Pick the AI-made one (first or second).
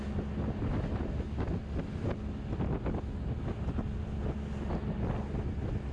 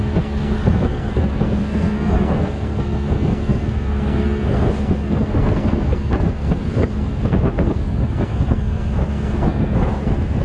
second